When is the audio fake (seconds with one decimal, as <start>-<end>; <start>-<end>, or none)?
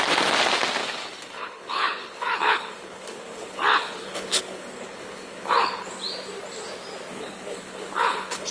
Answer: 0.8-5.9; 7.1-8.5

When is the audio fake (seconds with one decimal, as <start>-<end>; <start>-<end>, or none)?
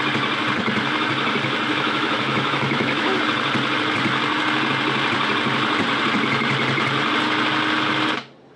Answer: 1.7-3.2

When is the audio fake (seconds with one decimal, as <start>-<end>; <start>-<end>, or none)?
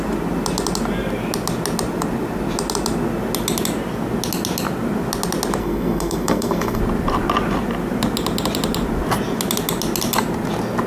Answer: 5.6-6.8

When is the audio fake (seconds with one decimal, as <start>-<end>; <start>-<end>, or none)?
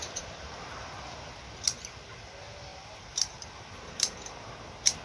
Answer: 0.0-0.9; 2.7-4.5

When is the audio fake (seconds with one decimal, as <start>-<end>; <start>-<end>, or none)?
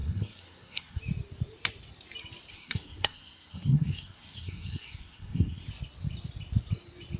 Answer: 0.0-1.0; 2.5-5.7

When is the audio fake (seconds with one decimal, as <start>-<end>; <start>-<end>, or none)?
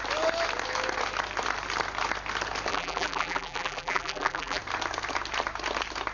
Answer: 2.7-4.6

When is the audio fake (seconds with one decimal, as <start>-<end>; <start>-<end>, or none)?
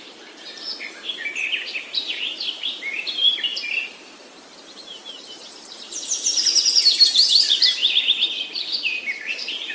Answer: 0.0-1.3; 1.9-5.0; 6.3-7.8; 8.7-9.7